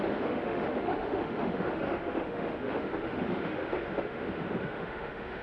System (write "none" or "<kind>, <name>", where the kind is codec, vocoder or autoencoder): autoencoder, DAC-VAE